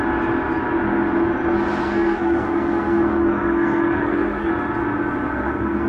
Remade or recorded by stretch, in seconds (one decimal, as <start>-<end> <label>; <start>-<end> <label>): 0.0-1.8 recorded; 1.8-4.5 remade; 4.5-5.3 recorded; 5.3-5.9 remade